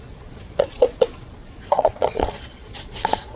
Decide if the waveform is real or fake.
fake